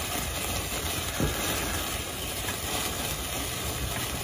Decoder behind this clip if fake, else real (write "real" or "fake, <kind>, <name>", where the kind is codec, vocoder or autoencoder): real